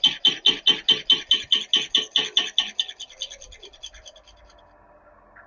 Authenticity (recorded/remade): recorded